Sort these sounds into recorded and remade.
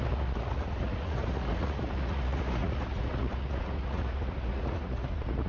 remade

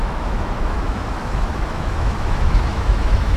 remade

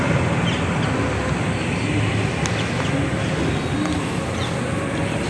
recorded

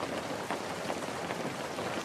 recorded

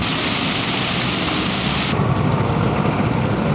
recorded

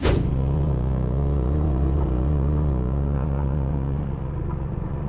remade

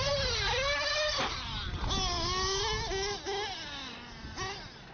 recorded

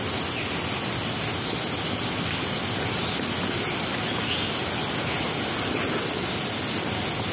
recorded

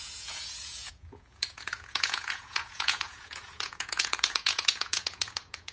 remade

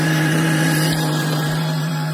remade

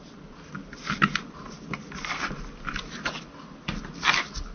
recorded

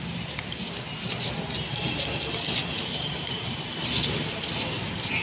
recorded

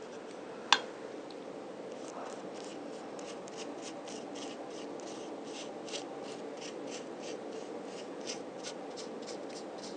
recorded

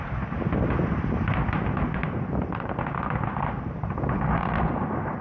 recorded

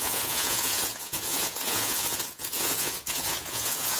remade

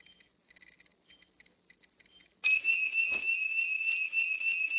recorded